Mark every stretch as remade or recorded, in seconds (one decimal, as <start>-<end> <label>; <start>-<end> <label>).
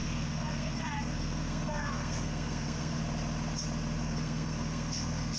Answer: 0.0-3.0 remade; 3.0-4.0 recorded; 4.0-5.4 remade